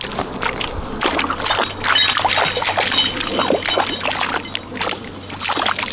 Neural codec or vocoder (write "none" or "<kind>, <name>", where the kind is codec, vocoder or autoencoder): none